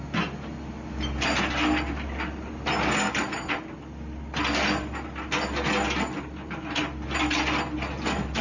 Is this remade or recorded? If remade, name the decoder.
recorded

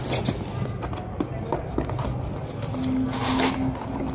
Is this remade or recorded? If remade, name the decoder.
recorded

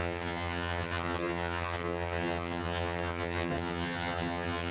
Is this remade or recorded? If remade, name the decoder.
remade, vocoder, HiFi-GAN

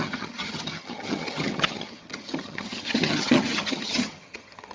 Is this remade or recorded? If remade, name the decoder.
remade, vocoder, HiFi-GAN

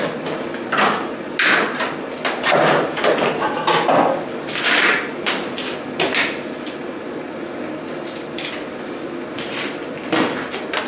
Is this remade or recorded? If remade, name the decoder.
recorded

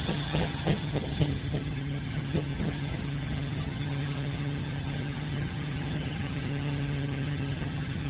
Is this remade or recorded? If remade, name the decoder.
remade, vocoder, HiFi-GAN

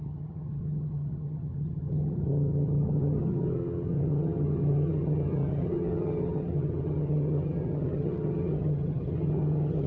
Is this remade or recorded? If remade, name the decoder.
remade, vocoder, HiFi-GAN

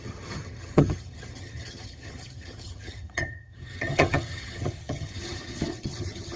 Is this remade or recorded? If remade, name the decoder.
remade, vocoder, HiFi-GAN